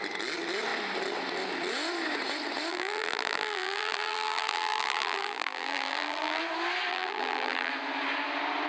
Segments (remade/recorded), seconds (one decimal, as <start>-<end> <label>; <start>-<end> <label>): 0.0-2.7 recorded; 2.7-6.4 remade; 6.4-6.9 recorded; 6.9-7.7 remade; 7.7-8.7 recorded